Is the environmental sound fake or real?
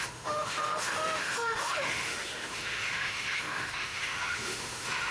fake